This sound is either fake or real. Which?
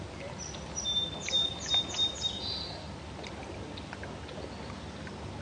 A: real